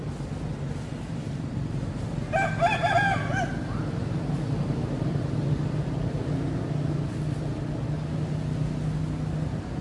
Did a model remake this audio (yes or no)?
no